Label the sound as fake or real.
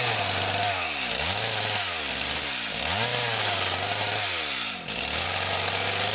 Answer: real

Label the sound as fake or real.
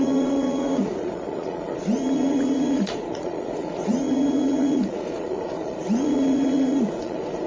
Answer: fake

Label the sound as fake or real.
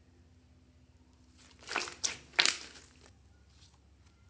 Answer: real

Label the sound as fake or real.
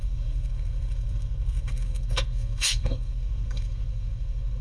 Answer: fake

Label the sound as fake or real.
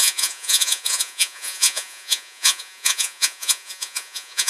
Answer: fake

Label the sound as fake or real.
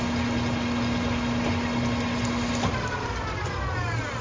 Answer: real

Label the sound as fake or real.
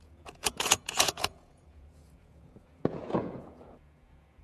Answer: fake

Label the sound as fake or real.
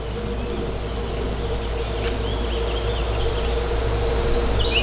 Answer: real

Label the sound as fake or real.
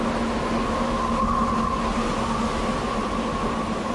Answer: real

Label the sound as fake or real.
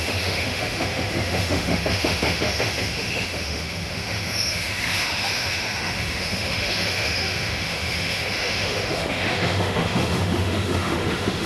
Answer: fake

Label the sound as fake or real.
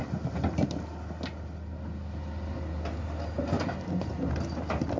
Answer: real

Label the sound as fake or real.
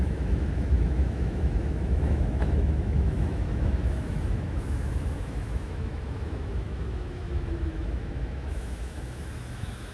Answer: fake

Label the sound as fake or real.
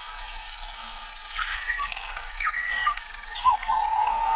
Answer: fake